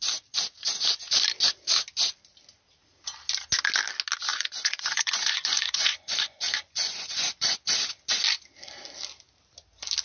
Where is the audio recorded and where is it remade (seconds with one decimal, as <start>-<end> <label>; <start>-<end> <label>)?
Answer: 0.0-4.3 recorded; 4.3-7.7 remade; 7.7-10.0 recorded